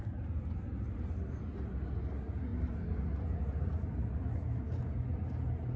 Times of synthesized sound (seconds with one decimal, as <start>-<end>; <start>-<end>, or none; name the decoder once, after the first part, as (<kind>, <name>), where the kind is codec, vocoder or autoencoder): none